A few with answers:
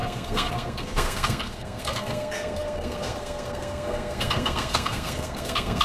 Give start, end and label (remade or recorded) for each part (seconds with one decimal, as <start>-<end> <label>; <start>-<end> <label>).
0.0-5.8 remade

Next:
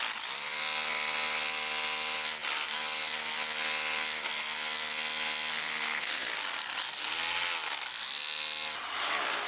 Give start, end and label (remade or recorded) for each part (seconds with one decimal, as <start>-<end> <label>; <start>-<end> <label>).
0.0-5.5 recorded; 5.5-6.2 remade; 6.2-9.5 recorded

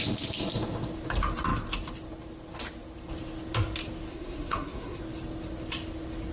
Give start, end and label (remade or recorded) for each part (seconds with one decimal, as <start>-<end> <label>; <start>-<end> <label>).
0.0-4.1 recorded; 4.1-5.0 remade; 5.0-6.3 recorded

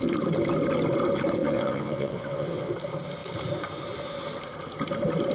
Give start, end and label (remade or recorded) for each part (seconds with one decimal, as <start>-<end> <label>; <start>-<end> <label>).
0.0-1.4 recorded; 1.4-2.7 remade; 2.7-5.3 recorded

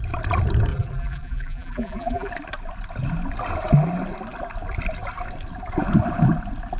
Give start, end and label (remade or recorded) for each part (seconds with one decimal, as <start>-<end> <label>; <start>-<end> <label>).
0.0-0.7 recorded; 0.7-2.3 remade; 2.3-6.8 recorded

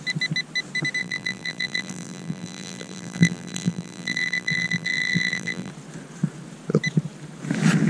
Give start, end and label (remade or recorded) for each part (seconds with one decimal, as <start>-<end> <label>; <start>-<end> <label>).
0.0-1.0 recorded; 1.0-5.7 remade; 5.7-7.9 recorded